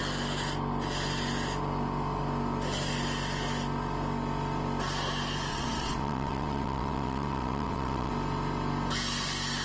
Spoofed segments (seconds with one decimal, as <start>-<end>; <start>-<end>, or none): 5.5-8.1

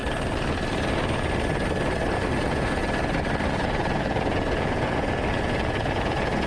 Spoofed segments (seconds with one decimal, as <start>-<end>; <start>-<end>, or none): 2.4-2.8; 3.5-6.5

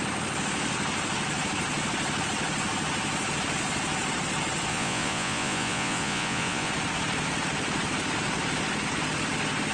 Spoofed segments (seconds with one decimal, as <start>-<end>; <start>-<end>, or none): 4.7-6.7

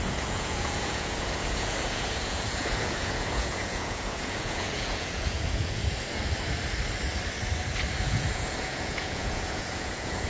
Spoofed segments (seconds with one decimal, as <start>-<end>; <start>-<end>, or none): 0.0-5.8; 8.0-10.3

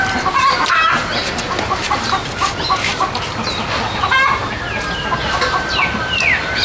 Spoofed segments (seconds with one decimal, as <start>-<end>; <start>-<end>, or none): 0.0-1.2; 5.2-6.6

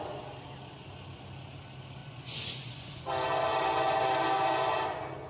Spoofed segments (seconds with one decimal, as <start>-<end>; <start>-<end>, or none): 2.0-3.0

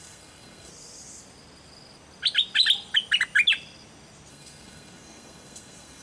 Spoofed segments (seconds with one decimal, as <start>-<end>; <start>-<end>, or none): 0.0-0.7; 4.3-6.0